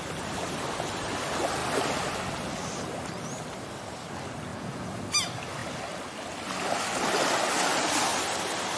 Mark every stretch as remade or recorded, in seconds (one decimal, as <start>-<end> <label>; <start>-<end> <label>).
0.0-4.5 recorded; 4.5-5.0 remade; 5.0-8.8 recorded